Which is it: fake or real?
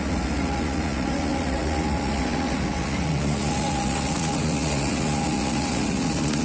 fake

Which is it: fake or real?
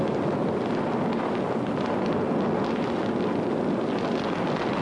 real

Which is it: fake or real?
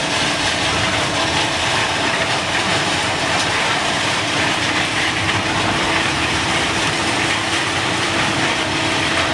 fake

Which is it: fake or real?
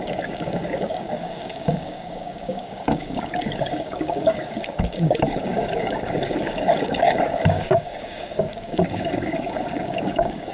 fake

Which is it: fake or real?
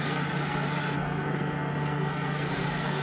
fake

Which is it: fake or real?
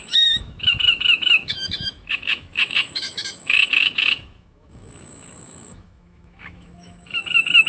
fake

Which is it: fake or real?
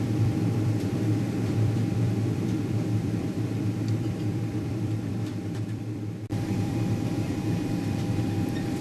fake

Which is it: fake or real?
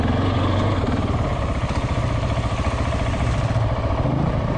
real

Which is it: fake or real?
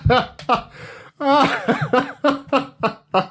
real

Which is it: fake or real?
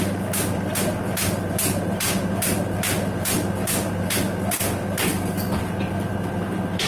real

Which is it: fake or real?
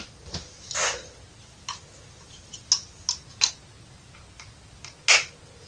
real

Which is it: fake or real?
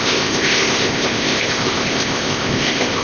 fake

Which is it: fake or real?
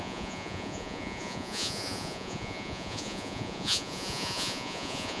fake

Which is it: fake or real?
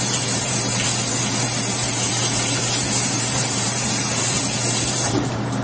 fake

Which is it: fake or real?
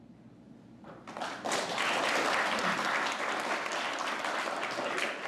real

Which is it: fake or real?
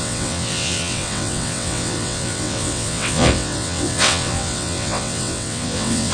fake